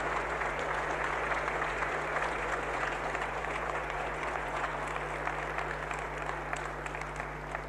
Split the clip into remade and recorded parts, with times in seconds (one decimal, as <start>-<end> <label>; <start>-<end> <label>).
0.0-4.7 remade; 4.7-7.7 recorded